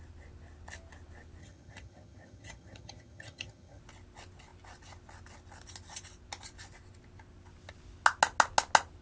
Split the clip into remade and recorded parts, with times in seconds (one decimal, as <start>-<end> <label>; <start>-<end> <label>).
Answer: 0.0-1.4 recorded; 1.4-3.8 remade; 3.8-9.0 recorded